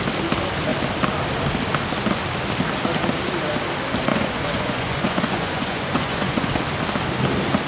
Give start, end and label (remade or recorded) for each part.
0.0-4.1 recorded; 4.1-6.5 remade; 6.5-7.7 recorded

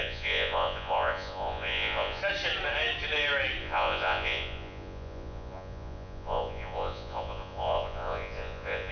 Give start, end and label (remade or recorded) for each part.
0.0-2.2 remade; 2.2-3.6 recorded; 3.6-8.9 remade

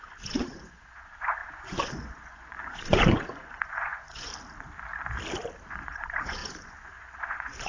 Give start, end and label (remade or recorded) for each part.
0.0-4.3 remade; 4.3-5.7 recorded; 5.7-7.7 remade

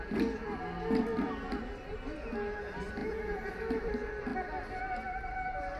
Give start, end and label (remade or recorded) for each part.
0.0-3.0 recorded; 3.0-3.5 remade; 3.5-5.8 recorded